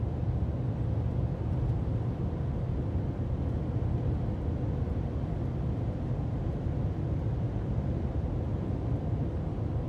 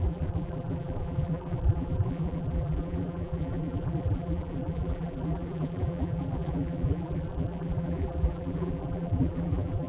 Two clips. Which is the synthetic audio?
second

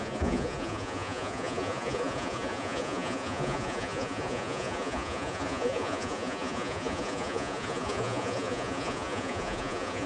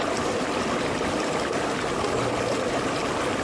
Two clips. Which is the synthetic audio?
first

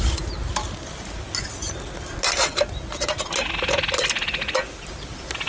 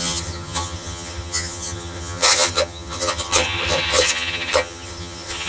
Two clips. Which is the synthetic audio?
second